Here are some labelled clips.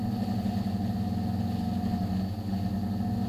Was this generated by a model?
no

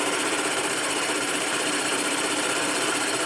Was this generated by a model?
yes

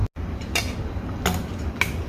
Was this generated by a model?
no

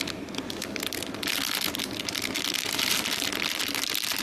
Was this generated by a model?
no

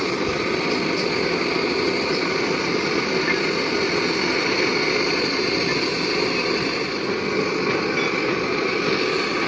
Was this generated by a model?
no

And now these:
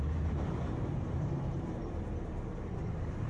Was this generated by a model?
yes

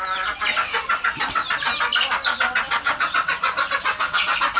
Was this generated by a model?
no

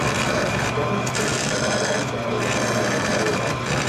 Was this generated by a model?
yes